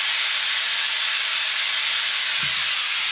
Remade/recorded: recorded